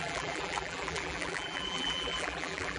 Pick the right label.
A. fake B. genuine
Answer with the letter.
A